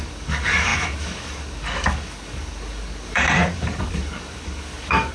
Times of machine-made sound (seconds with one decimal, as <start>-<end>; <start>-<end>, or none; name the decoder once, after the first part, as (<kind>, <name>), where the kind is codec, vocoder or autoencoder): 0.0-5.1 (codec, DAC)